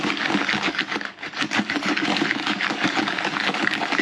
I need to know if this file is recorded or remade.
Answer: remade